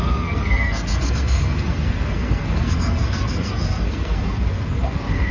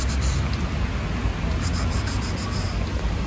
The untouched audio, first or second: second